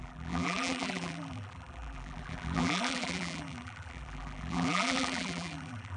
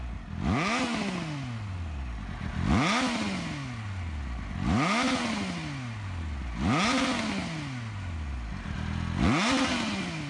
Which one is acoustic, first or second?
second